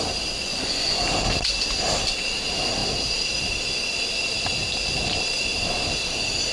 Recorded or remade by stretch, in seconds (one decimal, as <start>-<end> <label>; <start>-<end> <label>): 0.0-0.4 recorded; 0.4-1.0 remade; 1.0-6.5 recorded